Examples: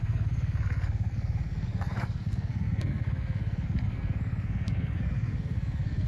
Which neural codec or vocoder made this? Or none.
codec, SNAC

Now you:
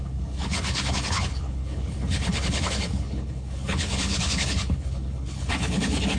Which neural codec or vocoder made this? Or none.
codec, HILCodec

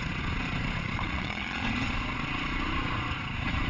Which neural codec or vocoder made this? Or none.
vocoder, Vocos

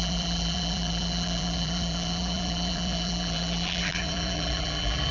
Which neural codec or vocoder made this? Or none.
vocoder, BigVGAN v2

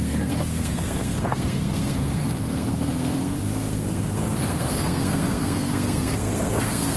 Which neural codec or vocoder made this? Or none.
codec, SNAC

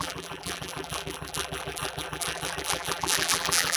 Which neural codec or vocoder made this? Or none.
vocoder, BigVGAN v2